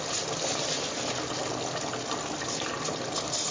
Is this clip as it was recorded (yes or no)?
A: yes